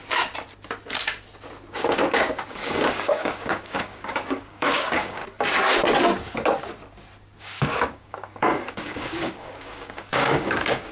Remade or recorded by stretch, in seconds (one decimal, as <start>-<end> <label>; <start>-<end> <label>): 0.0-1.7 recorded; 1.7-5.2 remade; 5.2-7.4 recorded; 7.4-10.9 remade